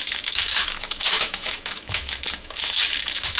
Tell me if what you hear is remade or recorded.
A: remade